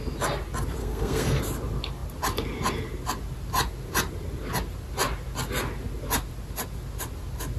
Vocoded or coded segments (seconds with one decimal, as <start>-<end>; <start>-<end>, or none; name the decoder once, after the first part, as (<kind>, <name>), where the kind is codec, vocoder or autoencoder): 0.8-1.4 (codec, SNAC)